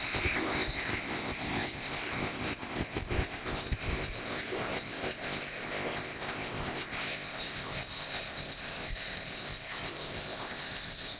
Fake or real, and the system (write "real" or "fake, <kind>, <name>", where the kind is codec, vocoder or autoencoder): fake, codec, ZipCodec